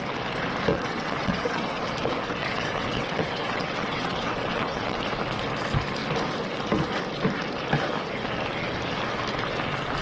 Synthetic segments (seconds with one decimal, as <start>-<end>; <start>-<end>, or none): 0.7-1.8; 2.4-5.0